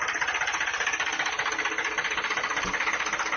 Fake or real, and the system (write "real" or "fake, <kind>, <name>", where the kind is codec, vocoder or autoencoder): real